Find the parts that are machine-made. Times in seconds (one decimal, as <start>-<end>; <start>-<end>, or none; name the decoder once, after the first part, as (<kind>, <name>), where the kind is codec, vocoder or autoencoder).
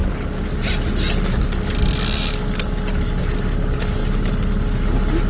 none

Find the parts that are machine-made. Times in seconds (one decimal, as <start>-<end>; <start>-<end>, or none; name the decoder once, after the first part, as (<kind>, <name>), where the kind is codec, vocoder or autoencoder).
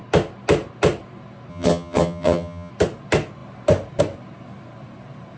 1.5-2.7 (vocoder, HiFi-GAN)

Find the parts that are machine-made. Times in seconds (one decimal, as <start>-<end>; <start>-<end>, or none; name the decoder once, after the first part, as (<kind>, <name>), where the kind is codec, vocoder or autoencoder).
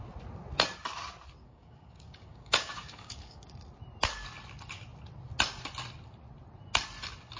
1.4-3.5 (codec, DAC)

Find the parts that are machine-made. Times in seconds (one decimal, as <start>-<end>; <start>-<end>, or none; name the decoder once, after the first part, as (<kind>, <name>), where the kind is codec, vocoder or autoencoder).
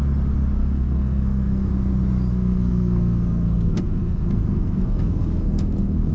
0.6-1.7 (codec, SNAC); 2.3-6.1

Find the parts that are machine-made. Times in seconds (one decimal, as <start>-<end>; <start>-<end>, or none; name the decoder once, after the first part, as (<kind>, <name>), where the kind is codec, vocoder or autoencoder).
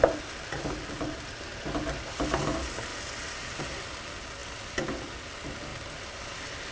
none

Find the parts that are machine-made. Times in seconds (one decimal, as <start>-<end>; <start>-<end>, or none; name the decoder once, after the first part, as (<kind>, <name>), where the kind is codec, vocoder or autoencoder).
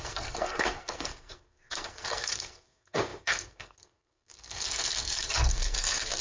0.0-6.2 (codec, SNAC)